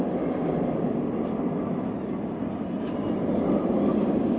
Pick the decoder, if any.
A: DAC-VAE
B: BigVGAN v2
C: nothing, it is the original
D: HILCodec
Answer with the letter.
C